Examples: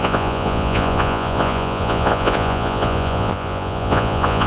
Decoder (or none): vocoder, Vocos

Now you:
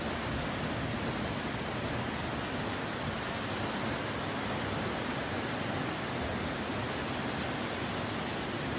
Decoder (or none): none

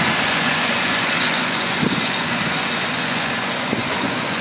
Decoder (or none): vocoder, Vocos